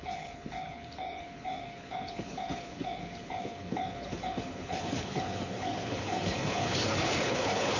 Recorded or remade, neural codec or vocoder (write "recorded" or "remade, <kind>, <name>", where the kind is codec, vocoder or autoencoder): remade, codec, HILCodec